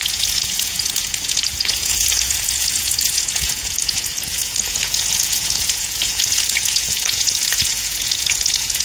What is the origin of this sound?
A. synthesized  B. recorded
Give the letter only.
A